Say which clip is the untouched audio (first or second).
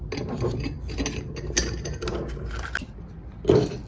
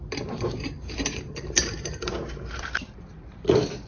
first